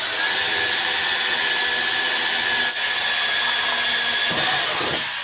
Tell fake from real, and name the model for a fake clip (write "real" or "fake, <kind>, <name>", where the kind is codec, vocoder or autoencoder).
real